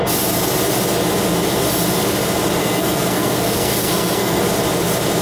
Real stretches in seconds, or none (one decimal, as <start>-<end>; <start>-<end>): 0.0-2.6; 4.4-5.2